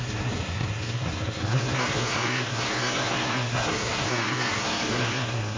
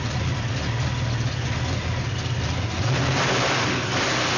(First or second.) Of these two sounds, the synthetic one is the first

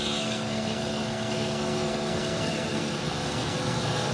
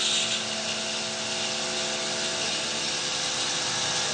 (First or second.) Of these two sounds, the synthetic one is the first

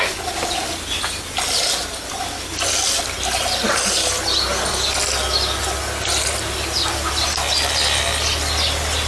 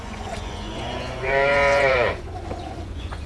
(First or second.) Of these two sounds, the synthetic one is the second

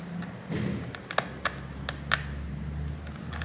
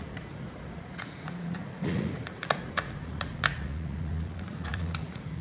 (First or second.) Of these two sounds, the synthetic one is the second